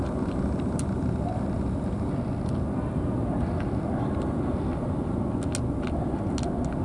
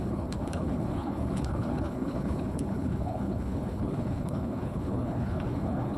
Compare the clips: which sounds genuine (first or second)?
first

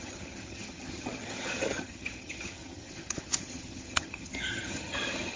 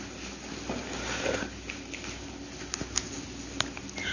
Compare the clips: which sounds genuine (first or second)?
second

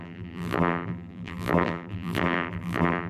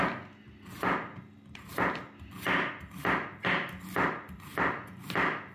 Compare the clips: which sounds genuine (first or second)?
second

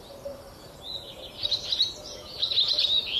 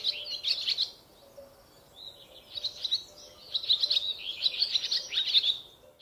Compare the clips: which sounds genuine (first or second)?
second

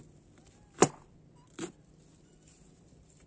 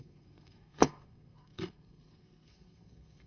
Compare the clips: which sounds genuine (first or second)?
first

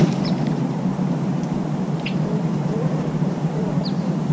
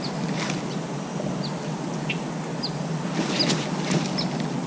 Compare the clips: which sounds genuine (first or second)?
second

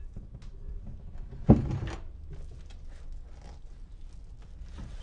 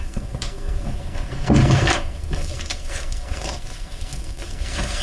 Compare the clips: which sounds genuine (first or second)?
first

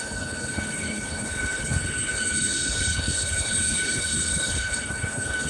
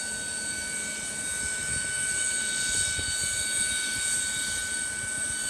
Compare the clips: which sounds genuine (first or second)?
second